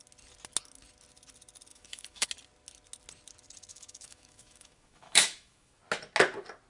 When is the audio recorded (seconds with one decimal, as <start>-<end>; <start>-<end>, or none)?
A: 0.0-1.7; 2.3-3.7; 5.8-6.7